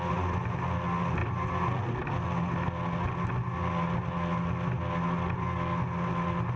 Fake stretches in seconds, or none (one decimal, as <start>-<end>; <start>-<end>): none